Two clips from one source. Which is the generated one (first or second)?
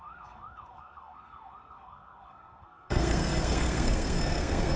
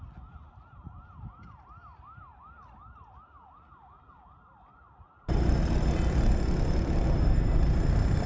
first